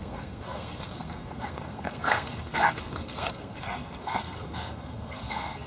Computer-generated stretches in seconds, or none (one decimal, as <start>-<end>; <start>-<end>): 0.0-5.7